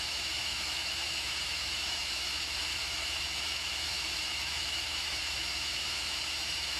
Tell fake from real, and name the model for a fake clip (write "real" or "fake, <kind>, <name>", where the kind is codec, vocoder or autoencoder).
fake, autoencoder, DAC-VAE